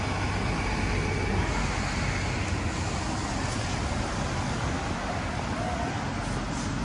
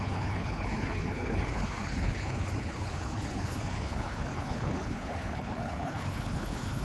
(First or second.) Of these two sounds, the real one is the first